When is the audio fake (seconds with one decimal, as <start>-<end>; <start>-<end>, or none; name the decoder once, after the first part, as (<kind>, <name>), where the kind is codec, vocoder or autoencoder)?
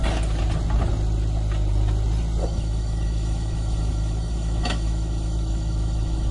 2.4-6.3 (autoencoder, DAC-VAE)